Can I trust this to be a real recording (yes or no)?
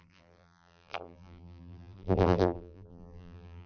no